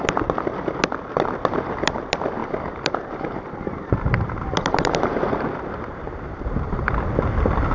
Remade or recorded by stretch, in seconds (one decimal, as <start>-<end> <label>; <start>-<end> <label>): 0.0-2.4 recorded; 2.4-7.0 remade; 7.0-7.7 recorded